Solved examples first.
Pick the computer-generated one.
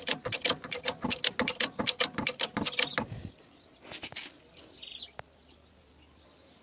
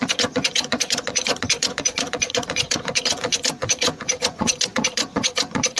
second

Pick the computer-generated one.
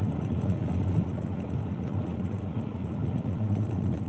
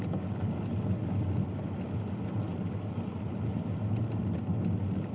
first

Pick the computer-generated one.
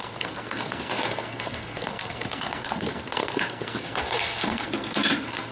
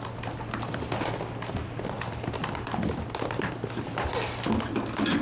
first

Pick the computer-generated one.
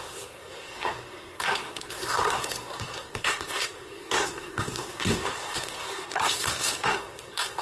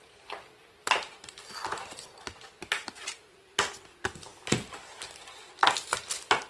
first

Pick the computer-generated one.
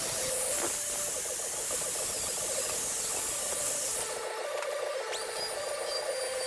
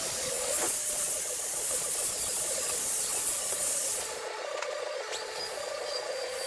second